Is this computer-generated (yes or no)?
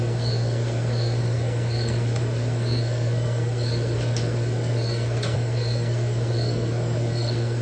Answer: yes